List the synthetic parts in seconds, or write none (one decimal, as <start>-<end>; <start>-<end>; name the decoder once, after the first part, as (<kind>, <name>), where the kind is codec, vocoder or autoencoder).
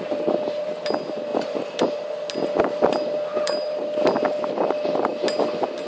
1.3-1.8 (vocoder, BigVGAN v2); 3.3-3.8